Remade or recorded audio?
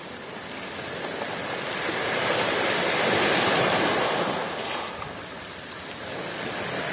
recorded